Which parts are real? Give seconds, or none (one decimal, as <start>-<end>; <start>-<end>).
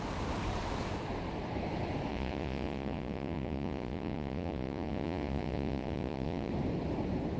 0.0-2.1; 6.5-7.4